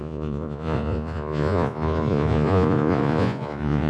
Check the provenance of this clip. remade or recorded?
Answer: remade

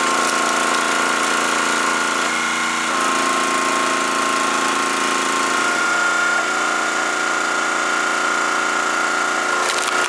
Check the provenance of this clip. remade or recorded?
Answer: recorded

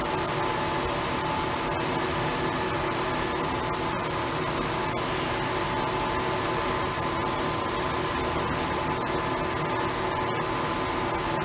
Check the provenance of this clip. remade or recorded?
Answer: recorded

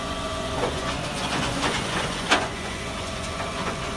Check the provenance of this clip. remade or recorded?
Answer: remade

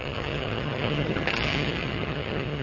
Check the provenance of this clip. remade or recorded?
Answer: remade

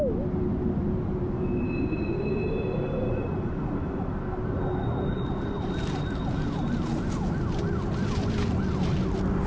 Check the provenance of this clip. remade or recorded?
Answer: recorded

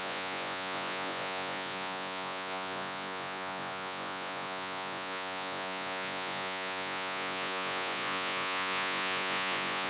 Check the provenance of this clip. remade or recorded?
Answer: remade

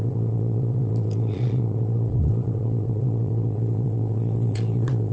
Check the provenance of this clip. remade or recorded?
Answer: remade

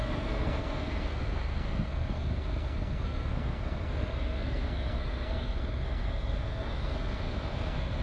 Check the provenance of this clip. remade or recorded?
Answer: remade